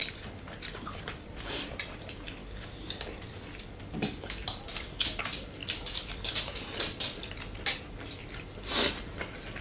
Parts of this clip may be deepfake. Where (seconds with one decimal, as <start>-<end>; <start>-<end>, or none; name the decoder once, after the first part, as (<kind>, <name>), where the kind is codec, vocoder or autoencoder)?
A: 0.0-1.9 (vocoder, BigVGAN v2); 2.4-3.8; 4.4-4.9; 5.6-9.6